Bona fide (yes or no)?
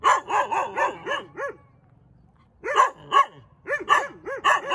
yes